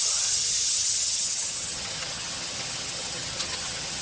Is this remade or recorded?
remade